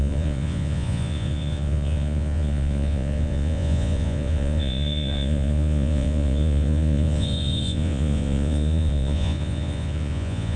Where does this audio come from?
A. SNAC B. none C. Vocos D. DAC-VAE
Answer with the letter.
C